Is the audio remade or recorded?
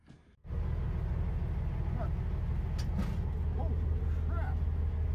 recorded